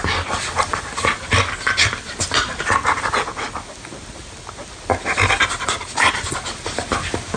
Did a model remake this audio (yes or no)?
no